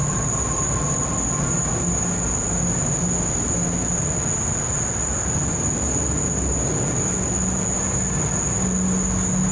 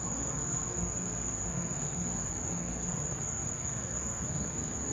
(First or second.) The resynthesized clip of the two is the second